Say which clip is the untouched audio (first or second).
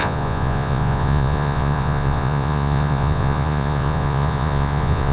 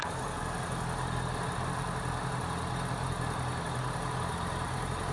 second